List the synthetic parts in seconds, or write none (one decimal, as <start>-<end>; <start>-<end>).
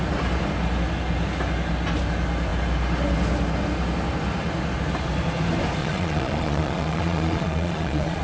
5.8-8.2